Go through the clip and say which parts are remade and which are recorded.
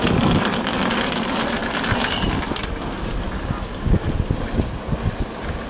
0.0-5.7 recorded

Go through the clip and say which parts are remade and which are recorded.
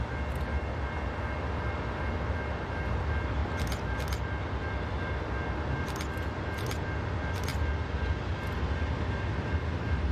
0.0-10.1 recorded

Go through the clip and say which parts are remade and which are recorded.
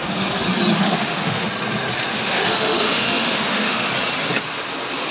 0.0-0.8 recorded; 0.8-1.5 remade; 1.5-2.1 recorded; 2.1-3.9 remade; 3.9-5.1 recorded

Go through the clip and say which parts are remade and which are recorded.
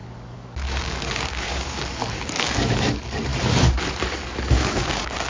0.0-3.3 remade; 3.3-4.1 recorded; 4.1-5.3 remade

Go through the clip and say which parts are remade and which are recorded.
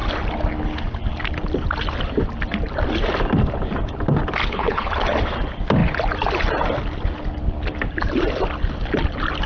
0.0-4.4 recorded; 4.4-4.9 remade; 4.9-9.5 recorded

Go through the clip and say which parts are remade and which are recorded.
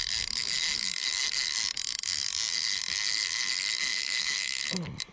0.0-3.9 recorded; 3.9-4.6 remade; 4.6-5.1 recorded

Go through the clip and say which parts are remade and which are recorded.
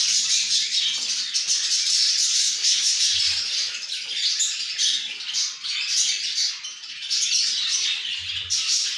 0.0-2.4 recorded; 2.4-3.0 remade; 3.0-9.0 recorded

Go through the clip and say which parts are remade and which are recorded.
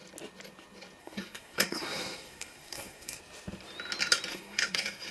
0.0-1.0 recorded; 1.0-3.2 remade; 3.2-4.3 recorded; 4.3-5.1 remade